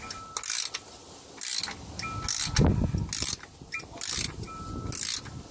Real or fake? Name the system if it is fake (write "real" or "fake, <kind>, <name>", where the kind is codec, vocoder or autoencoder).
real